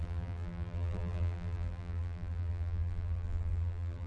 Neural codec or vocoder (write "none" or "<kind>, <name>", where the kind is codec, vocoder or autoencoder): vocoder, BigVGAN v2